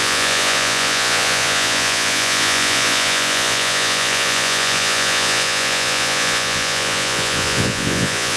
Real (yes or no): no